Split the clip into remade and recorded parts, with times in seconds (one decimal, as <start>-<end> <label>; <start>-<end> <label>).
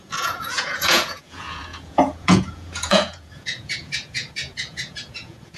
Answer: 0.0-5.6 remade